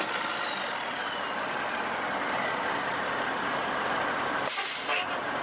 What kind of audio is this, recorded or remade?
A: recorded